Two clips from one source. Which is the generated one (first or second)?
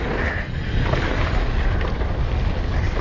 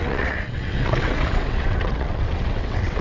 second